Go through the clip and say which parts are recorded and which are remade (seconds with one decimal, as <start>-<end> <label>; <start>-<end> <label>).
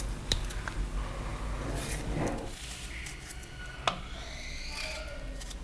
0.0-5.6 recorded